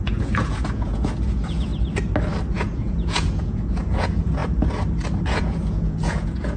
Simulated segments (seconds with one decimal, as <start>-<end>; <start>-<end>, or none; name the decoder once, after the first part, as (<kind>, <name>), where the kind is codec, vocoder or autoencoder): 0.0-1.7 (vocoder, Vocos); 2.5-4.4; 5.2-6.6